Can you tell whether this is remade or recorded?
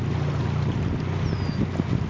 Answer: recorded